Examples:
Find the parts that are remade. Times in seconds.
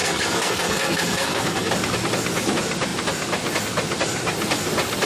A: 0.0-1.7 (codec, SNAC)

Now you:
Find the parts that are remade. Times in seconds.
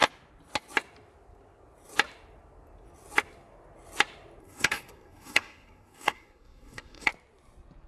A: 4.4-7.1 (codec, SNAC)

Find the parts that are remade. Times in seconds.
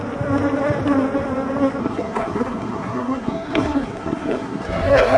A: 1.8-5.2 (codec, SNAC)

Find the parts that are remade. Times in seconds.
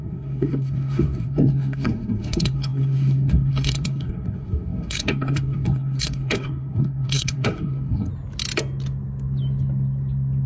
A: 0.0-8.1 (codec, SNAC)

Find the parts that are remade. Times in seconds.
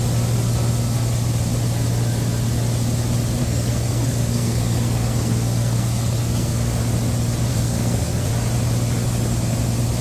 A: 3.4-6.8 (codec, SNAC); 7.5-8.3